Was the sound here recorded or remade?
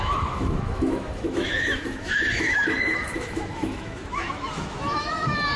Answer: remade